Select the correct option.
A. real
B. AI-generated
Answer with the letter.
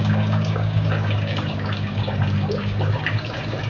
B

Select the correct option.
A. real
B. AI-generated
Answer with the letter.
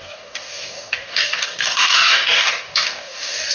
B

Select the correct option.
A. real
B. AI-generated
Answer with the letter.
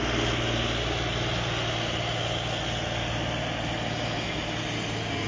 A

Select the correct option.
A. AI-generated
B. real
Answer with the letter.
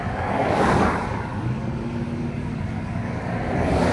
A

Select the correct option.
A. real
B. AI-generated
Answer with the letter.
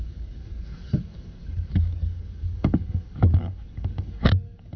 B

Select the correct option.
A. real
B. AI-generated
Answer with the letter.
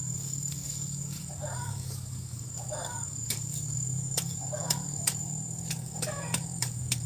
B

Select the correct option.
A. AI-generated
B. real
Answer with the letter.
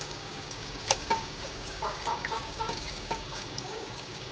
A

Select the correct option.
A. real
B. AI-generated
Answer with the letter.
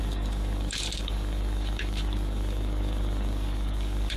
B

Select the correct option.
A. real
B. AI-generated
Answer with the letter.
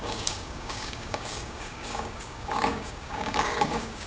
B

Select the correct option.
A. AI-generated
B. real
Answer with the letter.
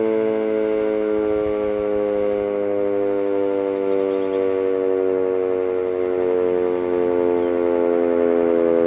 B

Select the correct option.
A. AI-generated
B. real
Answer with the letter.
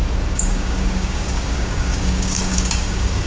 A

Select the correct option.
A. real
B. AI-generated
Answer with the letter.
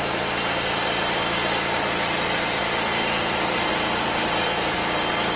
A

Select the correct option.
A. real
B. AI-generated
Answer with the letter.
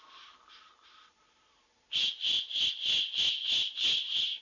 A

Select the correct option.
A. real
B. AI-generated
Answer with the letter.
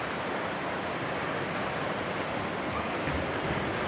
A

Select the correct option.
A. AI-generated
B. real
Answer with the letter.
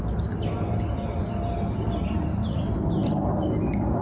B